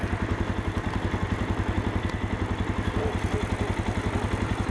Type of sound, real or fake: real